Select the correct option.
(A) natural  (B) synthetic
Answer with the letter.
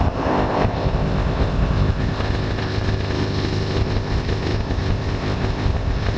B